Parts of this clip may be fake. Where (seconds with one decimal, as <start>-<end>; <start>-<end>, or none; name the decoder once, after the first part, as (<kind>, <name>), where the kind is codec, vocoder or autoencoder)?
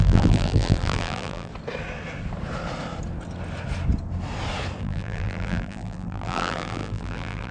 0.0-1.5 (vocoder, BigVGAN v2); 4.8-7.5